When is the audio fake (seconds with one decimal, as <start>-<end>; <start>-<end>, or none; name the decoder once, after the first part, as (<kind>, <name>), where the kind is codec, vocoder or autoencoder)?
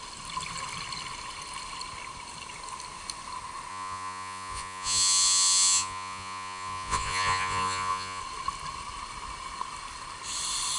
3.7-8.2 (vocoder, Vocos)